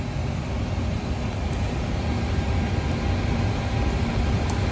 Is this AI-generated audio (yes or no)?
no